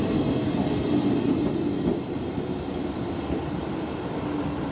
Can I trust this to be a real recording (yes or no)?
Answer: yes